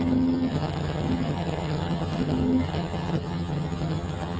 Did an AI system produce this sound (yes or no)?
yes